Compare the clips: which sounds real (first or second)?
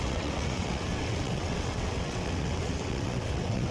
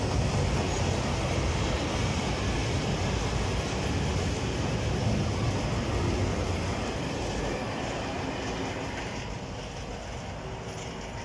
second